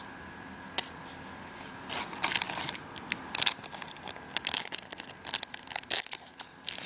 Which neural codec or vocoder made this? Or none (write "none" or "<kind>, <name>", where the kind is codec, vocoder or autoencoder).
none